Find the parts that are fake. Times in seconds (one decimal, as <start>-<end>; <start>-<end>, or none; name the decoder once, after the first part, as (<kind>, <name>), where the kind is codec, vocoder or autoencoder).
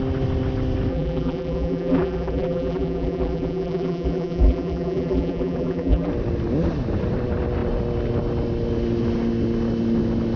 0.9-6.1 (vocoder, BigVGAN v2)